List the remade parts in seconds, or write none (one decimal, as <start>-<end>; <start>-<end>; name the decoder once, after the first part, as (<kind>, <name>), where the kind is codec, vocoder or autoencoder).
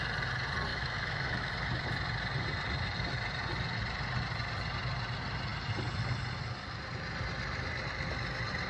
0.7-1.5 (autoencoder, DAC-VAE)